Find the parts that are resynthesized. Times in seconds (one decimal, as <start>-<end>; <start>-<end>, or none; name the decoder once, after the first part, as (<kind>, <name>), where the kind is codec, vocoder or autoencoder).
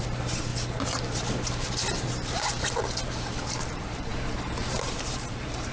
0.0-0.5 (vocoder, BigVGAN v2); 3.4-5.7